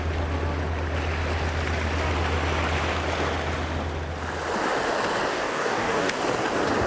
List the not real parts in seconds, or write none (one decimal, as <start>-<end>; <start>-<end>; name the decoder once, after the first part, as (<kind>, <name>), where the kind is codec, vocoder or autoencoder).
5.3-6.2 (codec, DAC)